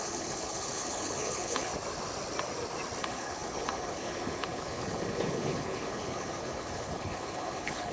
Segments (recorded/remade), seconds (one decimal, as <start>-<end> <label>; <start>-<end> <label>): 0.0-1.7 remade; 1.7-3.0 recorded; 3.0-7.9 remade